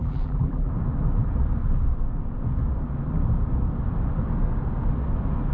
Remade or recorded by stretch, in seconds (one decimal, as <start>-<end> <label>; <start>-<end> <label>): 0.0-0.7 remade; 0.7-5.5 recorded